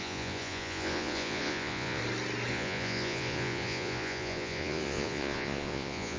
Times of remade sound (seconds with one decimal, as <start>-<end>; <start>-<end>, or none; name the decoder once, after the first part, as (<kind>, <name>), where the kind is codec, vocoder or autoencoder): 0.0-2.0 (vocoder, Vocos); 2.5-6.2